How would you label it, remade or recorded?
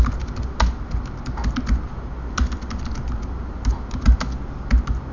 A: recorded